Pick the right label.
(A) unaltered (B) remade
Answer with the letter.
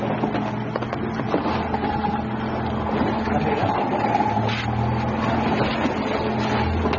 A